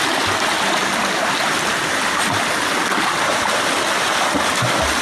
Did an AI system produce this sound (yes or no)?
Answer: no